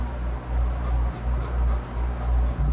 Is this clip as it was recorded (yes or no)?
yes